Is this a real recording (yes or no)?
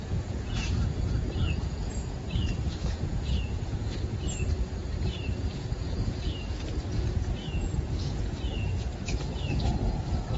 no